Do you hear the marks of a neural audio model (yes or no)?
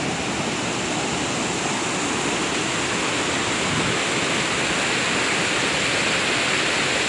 no